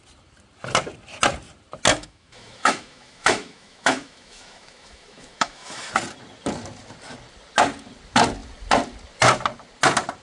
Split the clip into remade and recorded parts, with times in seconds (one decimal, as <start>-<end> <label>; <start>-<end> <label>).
0.0-1.9 recorded; 1.9-5.9 remade; 5.9-10.2 recorded